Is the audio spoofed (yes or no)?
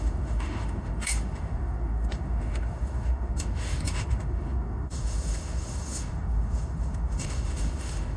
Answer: yes